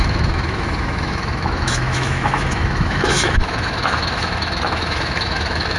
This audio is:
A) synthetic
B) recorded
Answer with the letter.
A